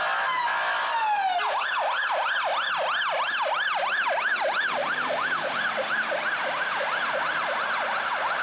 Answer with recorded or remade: recorded